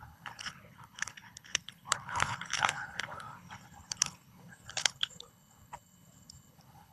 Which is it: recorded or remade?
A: remade